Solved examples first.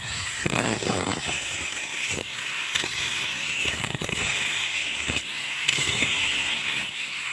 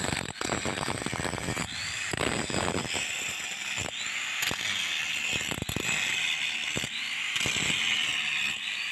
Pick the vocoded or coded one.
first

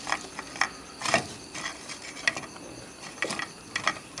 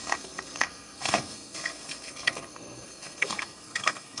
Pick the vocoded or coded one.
second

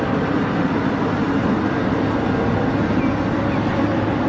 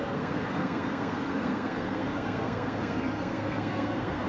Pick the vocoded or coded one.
second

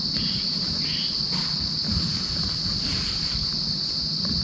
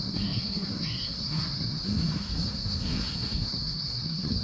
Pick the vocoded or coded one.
second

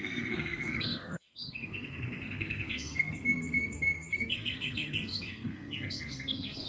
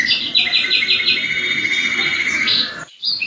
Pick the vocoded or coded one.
first